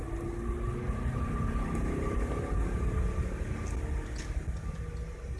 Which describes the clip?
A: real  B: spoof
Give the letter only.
A